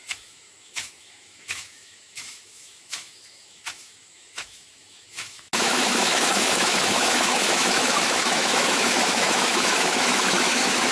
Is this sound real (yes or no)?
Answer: no